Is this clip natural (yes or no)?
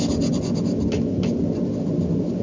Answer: yes